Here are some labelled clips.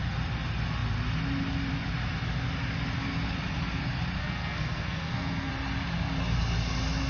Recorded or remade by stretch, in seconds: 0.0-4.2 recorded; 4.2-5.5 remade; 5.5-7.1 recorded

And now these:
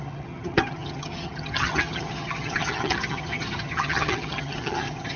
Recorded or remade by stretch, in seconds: 0.0-5.2 remade

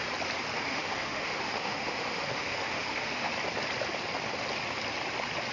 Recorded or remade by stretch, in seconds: 0.0-0.7 recorded; 0.7-3.3 remade; 3.3-5.5 recorded

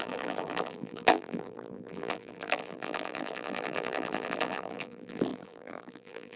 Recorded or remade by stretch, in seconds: 0.0-6.4 remade